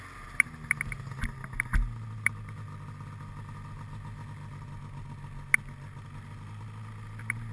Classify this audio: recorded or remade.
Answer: recorded